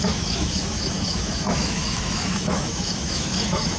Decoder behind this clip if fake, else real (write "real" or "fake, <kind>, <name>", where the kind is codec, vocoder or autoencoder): fake, autoencoder, DAC-VAE